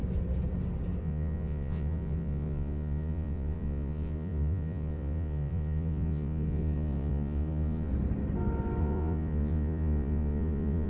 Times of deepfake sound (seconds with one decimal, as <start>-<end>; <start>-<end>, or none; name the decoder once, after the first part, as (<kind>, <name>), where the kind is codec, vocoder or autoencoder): 1.0-7.9 (vocoder, Vocos); 8.8-10.9